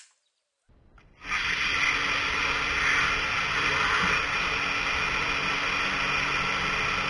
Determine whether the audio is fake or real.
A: real